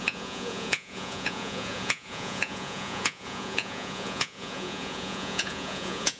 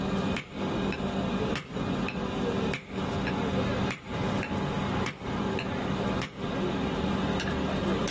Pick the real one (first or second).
second